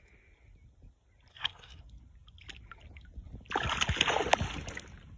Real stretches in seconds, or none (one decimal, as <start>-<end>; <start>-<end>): 0.0-1.3; 1.8-5.2